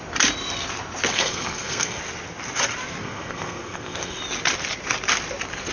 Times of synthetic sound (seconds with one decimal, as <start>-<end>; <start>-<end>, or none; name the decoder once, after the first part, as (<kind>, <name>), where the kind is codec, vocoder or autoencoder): 1.1-2.0 (codec, SNAC); 3.0-4.2